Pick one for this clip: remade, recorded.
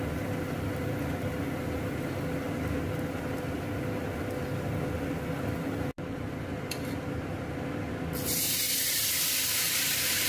recorded